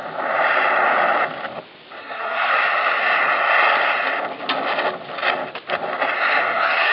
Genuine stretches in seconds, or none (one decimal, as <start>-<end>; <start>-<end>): 0.0-2.0; 2.5-6.4